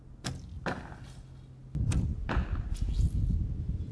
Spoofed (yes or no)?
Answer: no